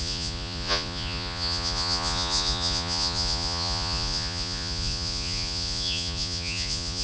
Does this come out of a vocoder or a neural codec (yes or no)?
yes